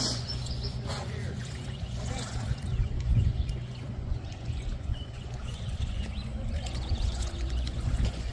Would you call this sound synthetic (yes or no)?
yes